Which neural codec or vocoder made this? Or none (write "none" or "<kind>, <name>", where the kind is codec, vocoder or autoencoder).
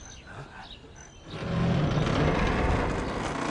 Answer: none